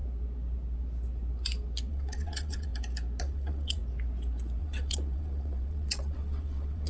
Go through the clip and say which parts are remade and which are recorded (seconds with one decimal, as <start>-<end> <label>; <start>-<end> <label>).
0.0-1.9 recorded; 1.9-2.7 remade; 2.7-3.2 recorded; 3.2-3.8 remade; 3.8-4.6 recorded; 4.6-6.9 remade